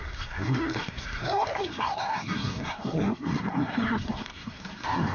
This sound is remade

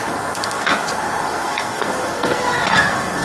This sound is remade